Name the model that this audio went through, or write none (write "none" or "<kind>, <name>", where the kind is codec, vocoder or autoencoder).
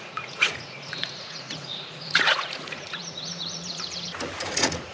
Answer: vocoder, Vocos